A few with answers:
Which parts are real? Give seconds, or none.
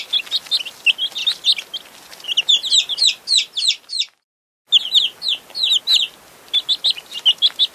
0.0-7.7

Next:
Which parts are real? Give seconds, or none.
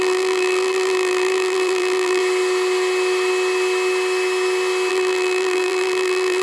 2.2-4.9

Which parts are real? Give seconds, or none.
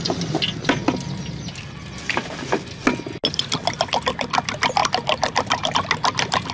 0.0-6.5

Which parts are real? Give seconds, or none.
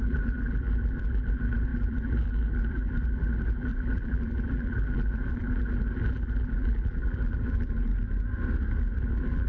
7.9-9.0